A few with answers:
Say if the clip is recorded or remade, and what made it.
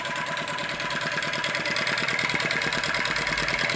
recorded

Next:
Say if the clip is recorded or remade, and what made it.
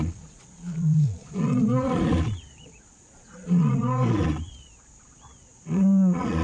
remade, vocoder, Vocos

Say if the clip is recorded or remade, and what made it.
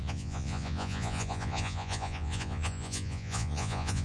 remade, vocoder, Vocos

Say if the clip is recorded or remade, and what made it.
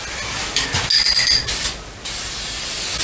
recorded